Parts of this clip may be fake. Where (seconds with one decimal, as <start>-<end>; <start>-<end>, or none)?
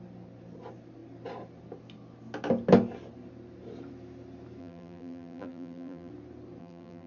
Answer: 4.6-6.1; 6.6-7.1